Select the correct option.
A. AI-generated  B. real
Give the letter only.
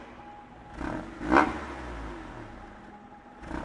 B